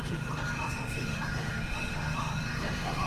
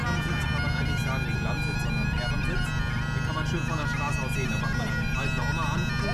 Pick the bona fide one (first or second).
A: second